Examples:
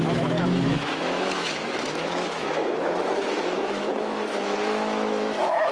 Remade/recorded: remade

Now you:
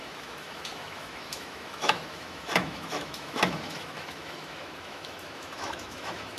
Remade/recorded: remade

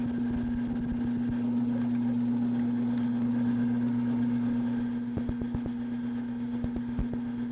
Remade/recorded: recorded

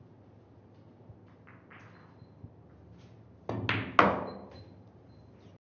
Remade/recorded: recorded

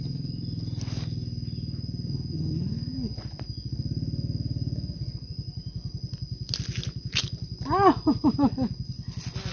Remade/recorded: recorded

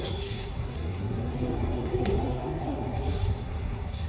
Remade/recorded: remade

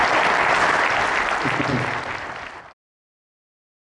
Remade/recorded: recorded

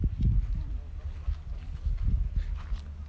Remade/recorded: recorded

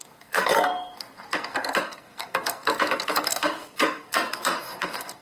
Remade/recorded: remade